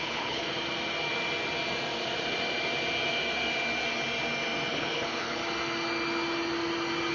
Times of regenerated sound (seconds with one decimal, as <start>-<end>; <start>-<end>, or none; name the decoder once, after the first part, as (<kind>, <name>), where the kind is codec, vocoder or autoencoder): 0.0-0.4 (codec, HILCodec); 4.7-5.4